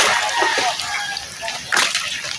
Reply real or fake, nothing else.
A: real